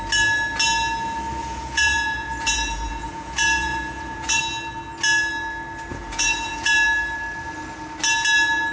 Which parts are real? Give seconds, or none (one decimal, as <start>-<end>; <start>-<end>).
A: 0.0-1.4; 4.4-5.9; 6.7-8.7